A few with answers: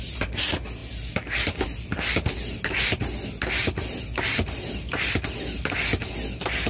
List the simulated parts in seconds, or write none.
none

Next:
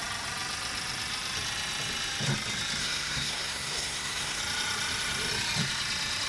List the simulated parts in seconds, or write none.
2.8-4.4

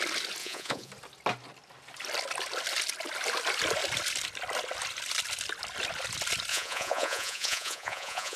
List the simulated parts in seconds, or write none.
0.4-0.9; 6.5-8.4

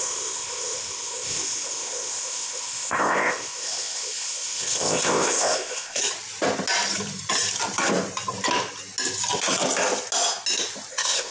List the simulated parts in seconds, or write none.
0.0-6.0; 10.9-11.3

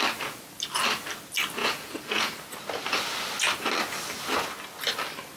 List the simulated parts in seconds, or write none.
1.6-2.3